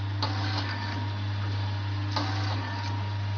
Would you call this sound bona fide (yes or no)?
yes